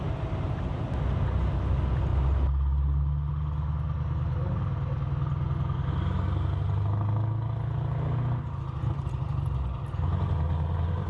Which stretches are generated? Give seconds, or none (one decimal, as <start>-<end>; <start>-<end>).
none